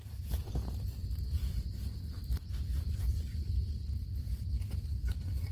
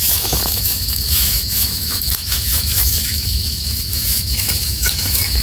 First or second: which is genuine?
first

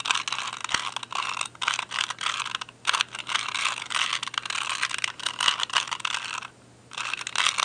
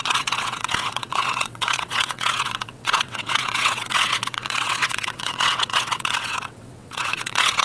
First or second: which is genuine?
first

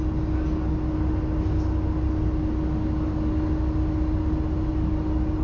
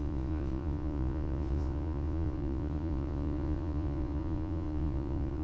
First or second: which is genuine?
first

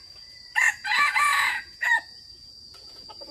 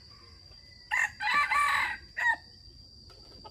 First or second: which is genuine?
second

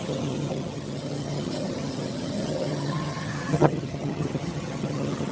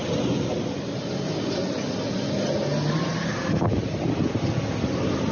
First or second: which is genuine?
second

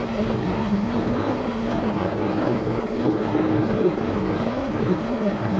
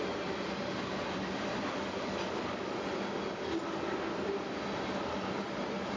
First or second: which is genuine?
second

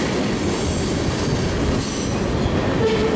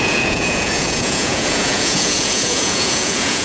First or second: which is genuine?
first